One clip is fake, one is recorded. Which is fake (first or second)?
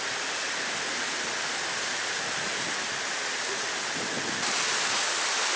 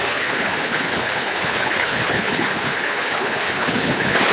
second